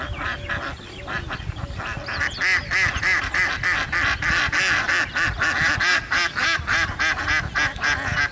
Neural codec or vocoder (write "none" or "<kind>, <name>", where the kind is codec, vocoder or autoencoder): none